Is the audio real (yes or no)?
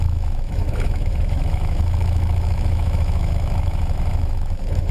no